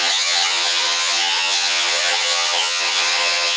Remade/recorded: remade